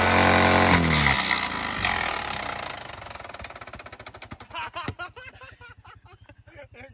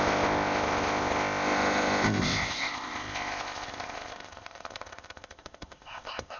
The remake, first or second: second